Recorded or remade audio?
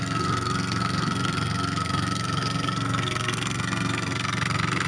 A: remade